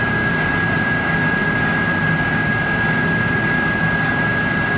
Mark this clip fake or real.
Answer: real